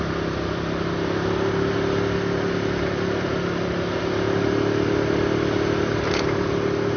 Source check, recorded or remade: recorded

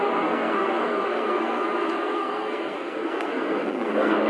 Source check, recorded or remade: remade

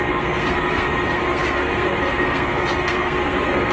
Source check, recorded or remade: remade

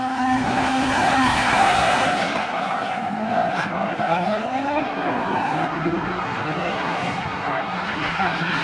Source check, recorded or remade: remade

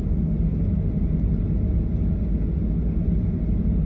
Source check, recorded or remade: recorded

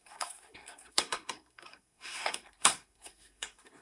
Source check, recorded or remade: remade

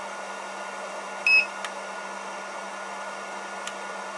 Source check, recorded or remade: recorded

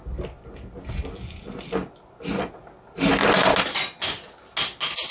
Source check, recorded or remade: recorded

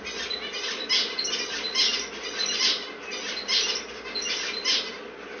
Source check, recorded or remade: recorded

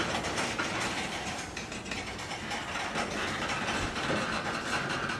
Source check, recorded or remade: recorded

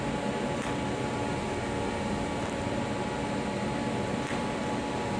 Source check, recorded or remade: recorded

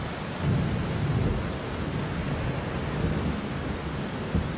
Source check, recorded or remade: recorded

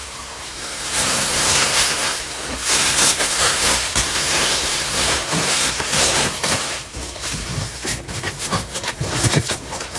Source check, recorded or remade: remade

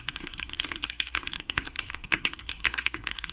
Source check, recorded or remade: remade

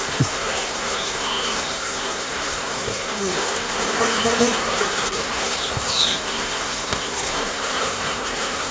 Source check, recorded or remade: remade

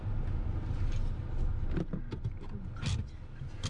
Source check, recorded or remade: recorded